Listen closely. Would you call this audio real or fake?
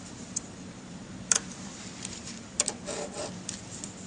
fake